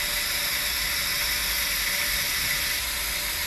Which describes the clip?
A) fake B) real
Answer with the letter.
B